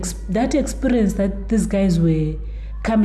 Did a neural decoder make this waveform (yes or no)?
no